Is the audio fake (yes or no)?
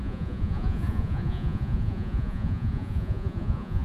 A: yes